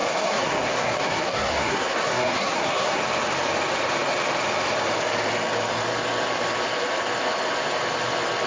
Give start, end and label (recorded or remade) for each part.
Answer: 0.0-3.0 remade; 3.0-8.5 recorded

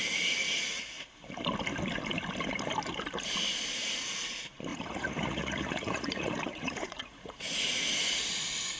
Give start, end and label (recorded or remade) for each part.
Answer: 0.0-0.4 recorded; 0.4-1.1 remade; 1.1-4.7 recorded; 4.7-8.3 remade; 8.3-8.8 recorded